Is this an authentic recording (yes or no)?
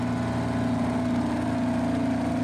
yes